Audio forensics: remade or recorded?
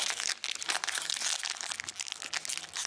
recorded